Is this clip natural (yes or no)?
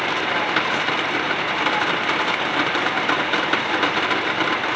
no